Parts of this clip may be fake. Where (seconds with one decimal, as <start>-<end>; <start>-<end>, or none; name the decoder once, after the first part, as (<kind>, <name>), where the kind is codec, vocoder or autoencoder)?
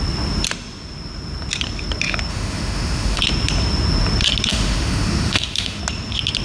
2.3-3.2 (autoencoder, DAC-VAE); 4.5-5.8